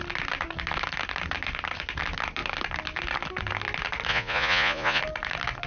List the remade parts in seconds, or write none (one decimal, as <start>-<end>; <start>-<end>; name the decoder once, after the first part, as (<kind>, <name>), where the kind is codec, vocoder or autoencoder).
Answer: 4.1-5.0 (vocoder, Vocos)